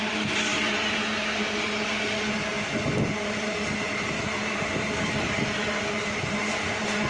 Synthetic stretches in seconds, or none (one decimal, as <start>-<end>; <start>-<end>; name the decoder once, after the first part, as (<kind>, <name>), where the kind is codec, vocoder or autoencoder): none